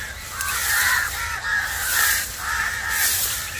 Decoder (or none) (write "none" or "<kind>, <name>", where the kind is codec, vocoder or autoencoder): vocoder, BigVGAN v2